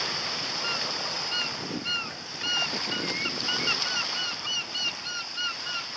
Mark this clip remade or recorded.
recorded